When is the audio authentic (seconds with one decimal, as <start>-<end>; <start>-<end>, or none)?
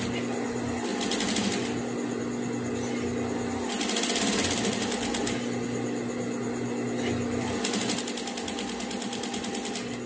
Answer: 0.0-10.1